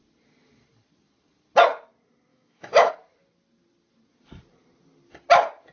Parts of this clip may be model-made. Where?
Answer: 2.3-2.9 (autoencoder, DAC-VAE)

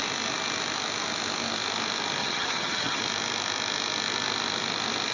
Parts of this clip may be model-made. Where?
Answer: 2.2-3.0 (vocoder, HiFi-GAN)

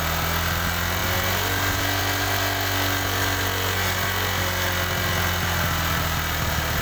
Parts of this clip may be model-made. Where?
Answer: none